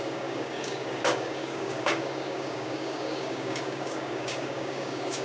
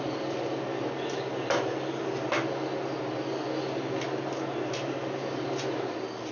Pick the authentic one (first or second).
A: second